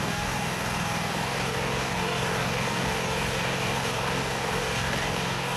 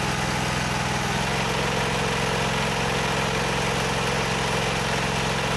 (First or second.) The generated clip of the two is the first